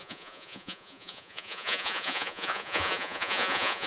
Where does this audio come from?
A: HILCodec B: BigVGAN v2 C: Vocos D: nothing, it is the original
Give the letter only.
C